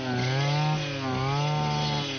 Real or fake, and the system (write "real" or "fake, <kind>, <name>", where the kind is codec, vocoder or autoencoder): real